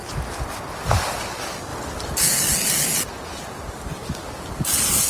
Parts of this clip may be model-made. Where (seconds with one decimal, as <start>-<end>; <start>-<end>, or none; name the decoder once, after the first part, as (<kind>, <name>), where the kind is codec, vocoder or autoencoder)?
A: none